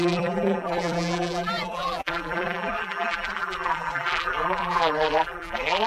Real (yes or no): no